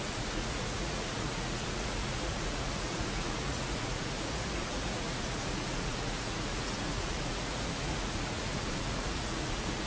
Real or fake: fake